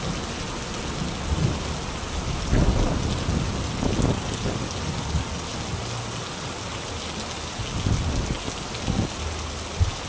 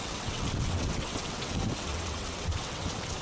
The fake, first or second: second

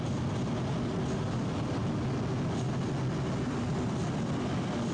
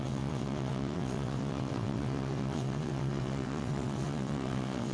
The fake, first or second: second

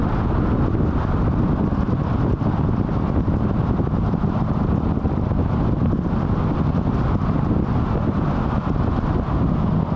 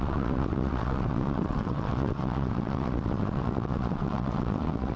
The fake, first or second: second